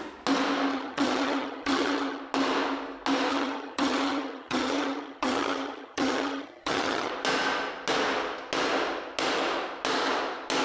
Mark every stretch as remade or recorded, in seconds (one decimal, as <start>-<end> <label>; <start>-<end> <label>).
0.0-0.7 recorded; 0.7-2.2 remade; 2.2-3.3 recorded; 3.3-7.1 remade; 7.1-10.6 recorded